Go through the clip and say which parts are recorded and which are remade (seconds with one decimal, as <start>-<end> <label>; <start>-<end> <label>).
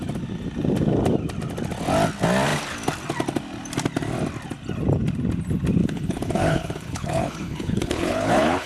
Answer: 0.0-5.8 recorded; 5.8-8.7 remade